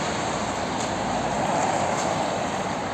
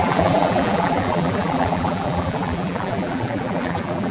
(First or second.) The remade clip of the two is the second